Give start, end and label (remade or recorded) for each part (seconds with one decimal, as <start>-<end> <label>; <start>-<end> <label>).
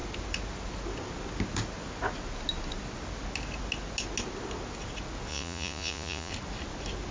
0.0-5.3 recorded; 5.3-6.3 remade; 6.3-7.1 recorded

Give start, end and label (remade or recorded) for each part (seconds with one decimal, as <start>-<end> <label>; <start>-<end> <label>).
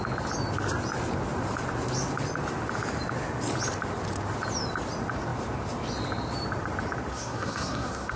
0.0-7.1 recorded; 7.1-8.2 remade